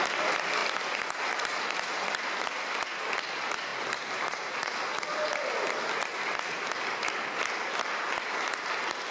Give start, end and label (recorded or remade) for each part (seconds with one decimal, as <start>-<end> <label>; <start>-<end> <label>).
0.0-9.1 recorded